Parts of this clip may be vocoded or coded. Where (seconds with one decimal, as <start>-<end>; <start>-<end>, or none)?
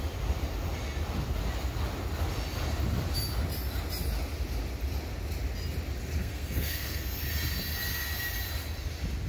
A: 6.2-7.2